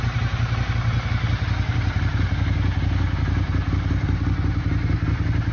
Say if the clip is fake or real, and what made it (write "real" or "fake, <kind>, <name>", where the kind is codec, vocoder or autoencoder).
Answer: real